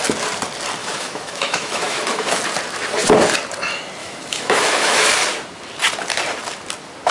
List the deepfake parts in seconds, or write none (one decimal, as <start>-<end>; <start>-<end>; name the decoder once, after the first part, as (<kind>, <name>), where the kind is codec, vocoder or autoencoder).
0.8-2.4 (autoencoder, DAC-VAE); 4.0-5.1